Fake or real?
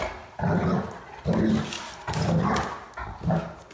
real